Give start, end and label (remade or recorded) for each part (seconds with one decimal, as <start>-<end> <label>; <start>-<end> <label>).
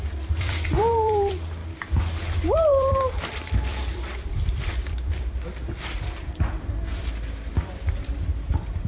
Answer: 0.0-8.9 remade